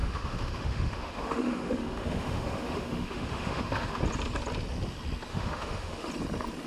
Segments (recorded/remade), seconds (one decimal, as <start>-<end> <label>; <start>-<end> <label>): 0.0-4.0 remade; 4.0-5.3 recorded; 5.3-6.1 remade; 6.1-6.7 recorded